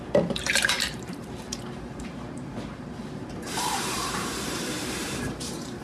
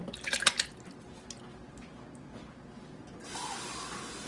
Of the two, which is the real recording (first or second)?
second